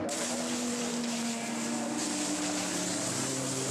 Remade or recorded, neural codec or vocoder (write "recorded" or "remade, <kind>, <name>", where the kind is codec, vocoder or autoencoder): recorded